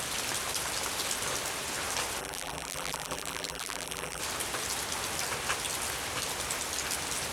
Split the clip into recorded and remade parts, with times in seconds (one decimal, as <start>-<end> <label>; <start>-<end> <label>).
0.0-2.2 recorded; 2.2-4.2 remade; 4.2-7.3 recorded